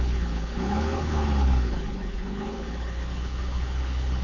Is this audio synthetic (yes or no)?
yes